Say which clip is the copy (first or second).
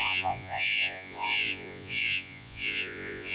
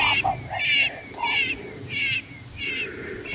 first